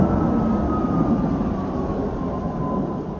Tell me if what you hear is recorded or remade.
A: recorded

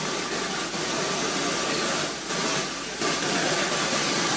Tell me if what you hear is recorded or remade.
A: recorded